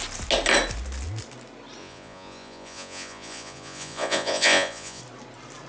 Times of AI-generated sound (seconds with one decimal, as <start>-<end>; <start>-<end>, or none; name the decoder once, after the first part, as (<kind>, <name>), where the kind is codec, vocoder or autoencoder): 1.8-5.0 (vocoder, Vocos)